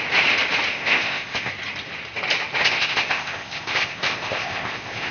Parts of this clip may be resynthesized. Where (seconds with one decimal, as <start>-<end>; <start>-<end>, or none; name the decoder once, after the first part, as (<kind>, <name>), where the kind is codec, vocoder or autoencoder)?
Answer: 0.7-1.5 (codec, ZipCodec); 2.6-5.1